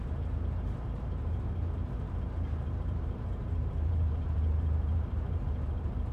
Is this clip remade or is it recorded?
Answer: remade